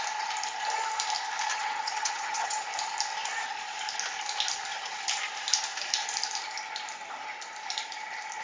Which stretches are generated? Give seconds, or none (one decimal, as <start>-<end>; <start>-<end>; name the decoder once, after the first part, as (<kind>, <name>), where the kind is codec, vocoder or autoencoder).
1.5-2.6 (vocoder, HiFi-GAN)